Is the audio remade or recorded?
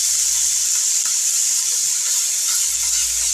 recorded